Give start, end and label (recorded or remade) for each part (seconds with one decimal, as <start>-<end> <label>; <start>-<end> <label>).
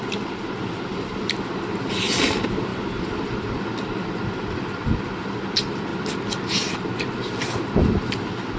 0.0-8.6 recorded